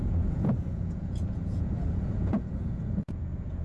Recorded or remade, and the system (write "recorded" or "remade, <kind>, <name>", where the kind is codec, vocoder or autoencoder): remade, vocoder, Vocos